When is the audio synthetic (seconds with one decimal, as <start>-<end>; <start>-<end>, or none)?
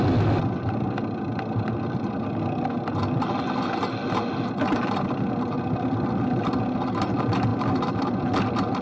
none